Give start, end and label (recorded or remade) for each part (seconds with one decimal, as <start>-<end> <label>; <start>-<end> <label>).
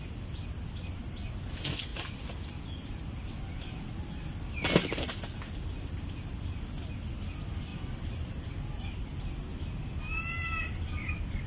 0.0-11.5 recorded